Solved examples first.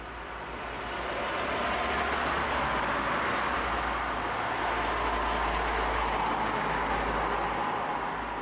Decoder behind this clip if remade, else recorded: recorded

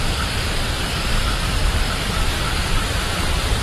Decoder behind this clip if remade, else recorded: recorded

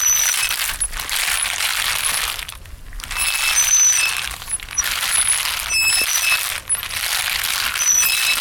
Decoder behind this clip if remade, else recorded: recorded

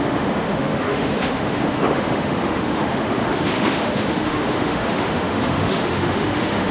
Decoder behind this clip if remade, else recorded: remade, autoencoder, DAC-VAE